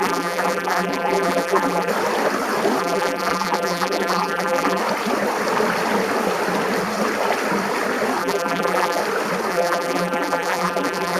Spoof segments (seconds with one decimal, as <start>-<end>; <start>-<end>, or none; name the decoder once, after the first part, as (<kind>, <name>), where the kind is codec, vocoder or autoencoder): 0.0-1.9 (vocoder, BigVGAN v2); 2.8-4.8; 8.2-9.0; 9.5-11.2